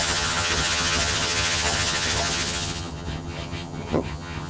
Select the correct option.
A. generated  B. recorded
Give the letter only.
A